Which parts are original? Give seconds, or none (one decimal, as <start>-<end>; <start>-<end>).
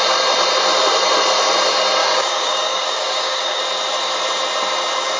0.0-2.0; 3.6-5.2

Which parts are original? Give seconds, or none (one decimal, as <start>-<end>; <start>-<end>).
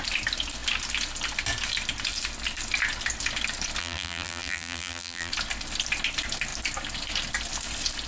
0.0-3.8; 5.3-8.1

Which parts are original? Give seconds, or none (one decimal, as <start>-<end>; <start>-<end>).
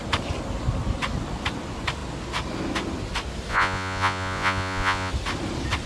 0.0-3.5; 5.1-5.9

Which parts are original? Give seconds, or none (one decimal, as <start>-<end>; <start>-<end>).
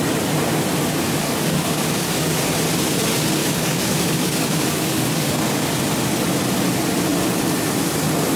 0.0-1.2; 2.4-3.4; 5.7-8.4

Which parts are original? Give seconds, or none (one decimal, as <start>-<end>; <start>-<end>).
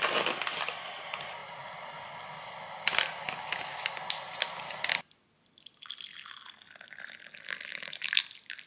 0.0-8.7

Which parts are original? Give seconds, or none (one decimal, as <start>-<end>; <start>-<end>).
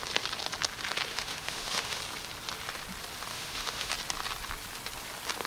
0.0-1.1; 2.0-3.3; 3.9-5.5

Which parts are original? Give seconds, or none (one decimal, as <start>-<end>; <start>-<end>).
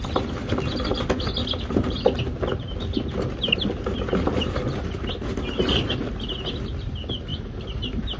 0.0-7.3